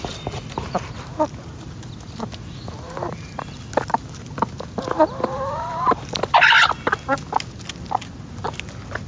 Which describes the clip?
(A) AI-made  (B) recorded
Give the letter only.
B